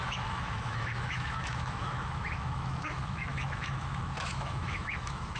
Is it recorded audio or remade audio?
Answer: remade